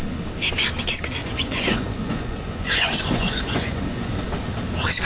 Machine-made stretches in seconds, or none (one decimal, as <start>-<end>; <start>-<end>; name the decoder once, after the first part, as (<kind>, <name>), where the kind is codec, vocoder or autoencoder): 1.2-4.2 (vocoder, Vocos)